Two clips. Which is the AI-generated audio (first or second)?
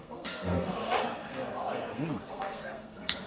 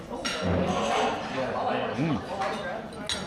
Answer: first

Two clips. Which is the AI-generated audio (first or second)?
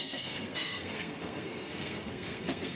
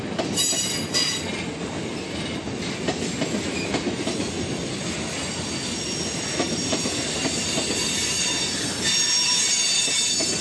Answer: first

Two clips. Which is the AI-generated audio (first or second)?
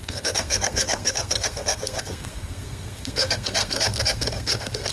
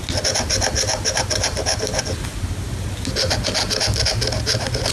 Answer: first